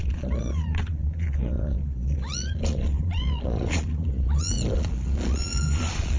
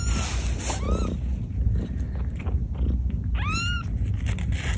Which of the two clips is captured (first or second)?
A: second